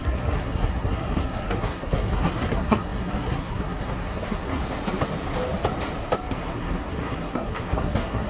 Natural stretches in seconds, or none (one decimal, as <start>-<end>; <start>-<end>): 4.6-6.3